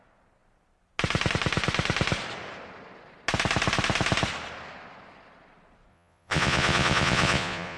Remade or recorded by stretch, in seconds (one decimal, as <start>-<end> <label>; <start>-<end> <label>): 0.0-5.9 recorded; 5.9-7.8 remade